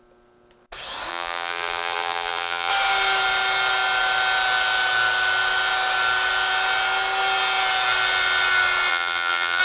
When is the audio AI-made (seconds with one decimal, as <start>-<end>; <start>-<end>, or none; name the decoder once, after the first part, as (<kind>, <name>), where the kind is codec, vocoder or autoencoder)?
1.1-2.7 (vocoder, BigVGAN v2); 8.9-9.6